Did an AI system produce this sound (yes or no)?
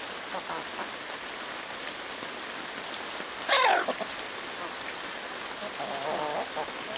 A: no